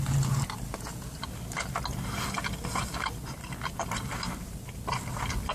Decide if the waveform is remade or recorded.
recorded